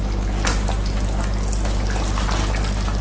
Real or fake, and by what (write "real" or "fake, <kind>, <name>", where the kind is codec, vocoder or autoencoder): real